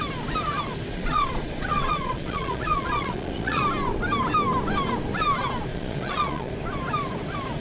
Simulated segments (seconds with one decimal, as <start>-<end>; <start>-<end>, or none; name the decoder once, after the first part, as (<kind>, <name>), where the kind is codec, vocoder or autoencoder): 0.9-3.6 (vocoder, Vocos); 5.7-6.5